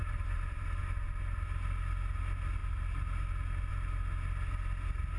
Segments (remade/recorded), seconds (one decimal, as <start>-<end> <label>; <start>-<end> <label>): 0.0-0.8 remade; 0.8-5.2 recorded